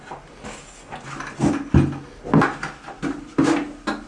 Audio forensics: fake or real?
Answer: real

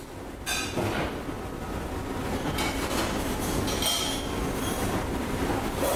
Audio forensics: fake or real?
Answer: real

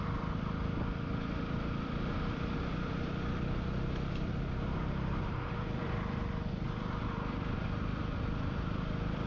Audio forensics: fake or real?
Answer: fake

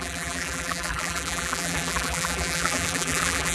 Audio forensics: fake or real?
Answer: fake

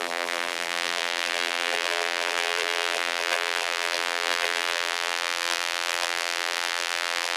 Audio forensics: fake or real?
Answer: fake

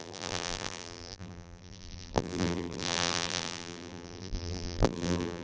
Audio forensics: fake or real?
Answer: fake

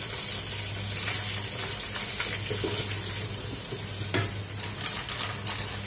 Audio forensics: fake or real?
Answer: real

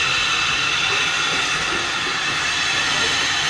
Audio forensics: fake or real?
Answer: real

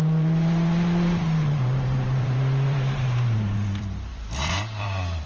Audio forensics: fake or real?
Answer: fake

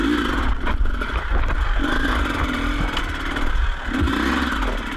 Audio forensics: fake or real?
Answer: real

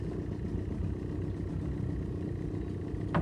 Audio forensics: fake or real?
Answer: real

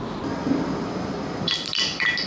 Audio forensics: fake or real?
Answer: fake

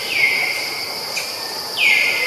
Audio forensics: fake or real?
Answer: fake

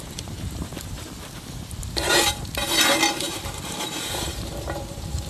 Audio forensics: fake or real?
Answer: fake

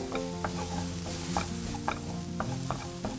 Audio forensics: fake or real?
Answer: real